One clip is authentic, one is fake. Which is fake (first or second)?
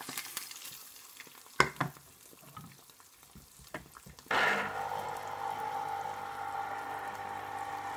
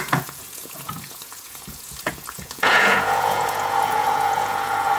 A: second